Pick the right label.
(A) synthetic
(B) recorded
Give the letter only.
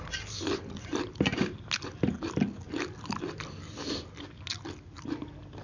B